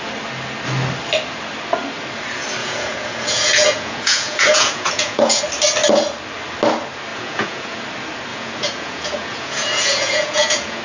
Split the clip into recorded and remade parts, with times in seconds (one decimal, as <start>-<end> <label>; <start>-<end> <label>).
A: 0.0-2.6 recorded; 2.6-5.4 remade; 5.4-7.1 recorded; 7.1-7.8 remade; 7.8-8.3 recorded; 8.3-10.8 remade